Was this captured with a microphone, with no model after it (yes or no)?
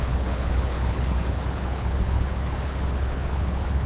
no